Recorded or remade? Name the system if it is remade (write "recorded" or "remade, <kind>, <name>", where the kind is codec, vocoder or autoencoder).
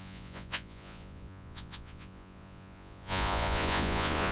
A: remade, vocoder, Vocos